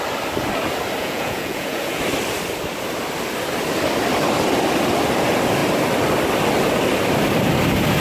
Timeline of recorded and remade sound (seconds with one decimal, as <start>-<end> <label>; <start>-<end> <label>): 0.0-1.0 recorded; 1.0-2.0 remade; 2.0-8.0 recorded